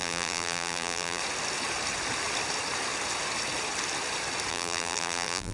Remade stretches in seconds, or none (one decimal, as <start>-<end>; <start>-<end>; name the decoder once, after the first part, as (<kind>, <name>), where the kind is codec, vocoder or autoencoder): 0.0-1.2 (vocoder, BigVGAN v2); 4.5-5.5